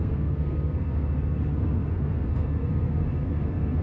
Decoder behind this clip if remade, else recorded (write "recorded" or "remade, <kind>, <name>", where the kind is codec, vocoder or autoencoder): remade, codec, SNAC